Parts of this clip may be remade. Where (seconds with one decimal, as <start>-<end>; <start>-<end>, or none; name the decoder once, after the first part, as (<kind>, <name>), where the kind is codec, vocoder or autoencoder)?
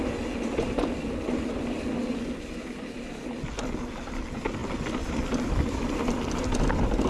none